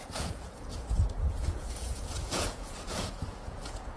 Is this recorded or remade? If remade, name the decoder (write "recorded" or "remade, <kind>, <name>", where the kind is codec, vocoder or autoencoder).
remade, vocoder, Vocos